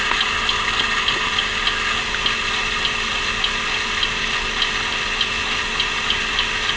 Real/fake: real